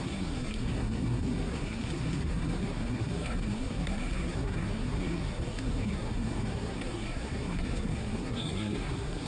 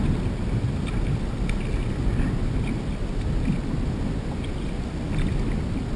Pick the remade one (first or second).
first